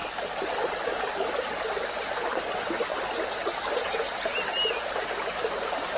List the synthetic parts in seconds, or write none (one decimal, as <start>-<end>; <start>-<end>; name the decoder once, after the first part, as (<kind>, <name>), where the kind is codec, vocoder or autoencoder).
none